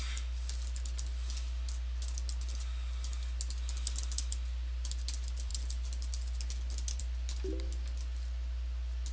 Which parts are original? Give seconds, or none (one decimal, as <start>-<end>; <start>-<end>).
0.0-9.1